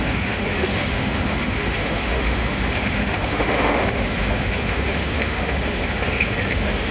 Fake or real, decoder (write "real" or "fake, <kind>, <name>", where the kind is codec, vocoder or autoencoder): fake, autoencoder, DAC-VAE